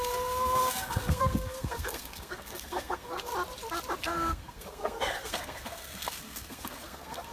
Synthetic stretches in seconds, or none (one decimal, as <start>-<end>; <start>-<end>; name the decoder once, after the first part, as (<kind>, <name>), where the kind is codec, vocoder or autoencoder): 0.0-3.3 (codec, SNAC); 4.0-7.3